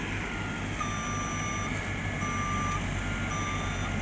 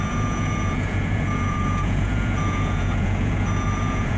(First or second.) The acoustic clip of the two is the first